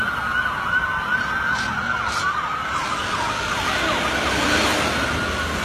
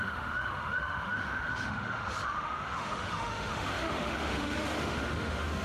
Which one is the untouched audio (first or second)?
first